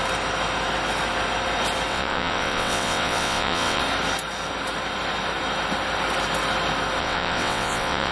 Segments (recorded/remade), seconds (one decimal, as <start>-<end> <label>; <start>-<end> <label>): 0.0-1.9 recorded; 1.9-3.8 remade; 3.8-7.0 recorded; 7.0-8.1 remade